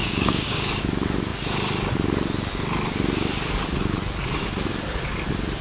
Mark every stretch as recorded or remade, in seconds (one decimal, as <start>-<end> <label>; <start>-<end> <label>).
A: 0.0-0.8 remade; 0.8-5.6 recorded